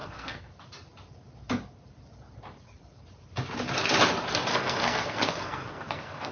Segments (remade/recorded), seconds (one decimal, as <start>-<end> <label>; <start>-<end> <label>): 0.0-0.5 remade; 0.5-4.5 recorded; 4.5-6.3 remade